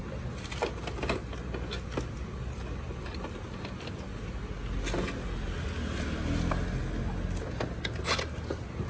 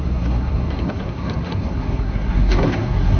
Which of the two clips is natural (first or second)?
first